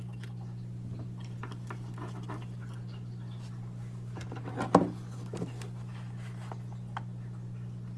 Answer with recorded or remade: recorded